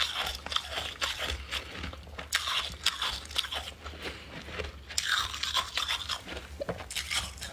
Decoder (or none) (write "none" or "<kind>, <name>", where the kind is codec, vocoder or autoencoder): none